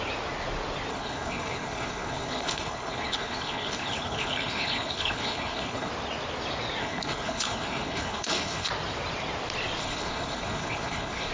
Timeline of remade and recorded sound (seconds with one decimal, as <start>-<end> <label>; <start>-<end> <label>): 0.0-0.9 recorded; 0.9-5.9 remade; 5.9-6.8 recorded; 6.8-8.7 remade; 8.7-9.8 recorded; 9.8-11.3 remade